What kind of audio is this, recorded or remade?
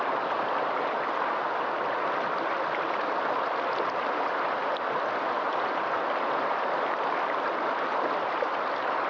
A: recorded